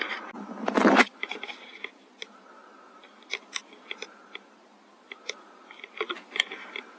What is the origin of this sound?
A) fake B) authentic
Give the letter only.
A